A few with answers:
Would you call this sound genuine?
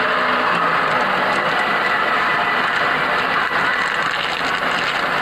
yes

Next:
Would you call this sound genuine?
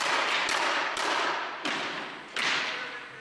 yes